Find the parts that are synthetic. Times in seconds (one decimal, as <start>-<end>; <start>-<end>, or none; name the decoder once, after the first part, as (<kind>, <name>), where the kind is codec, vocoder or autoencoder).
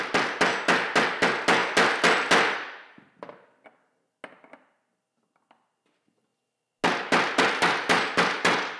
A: none